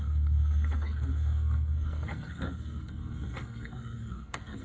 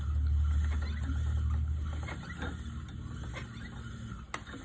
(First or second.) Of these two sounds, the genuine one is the second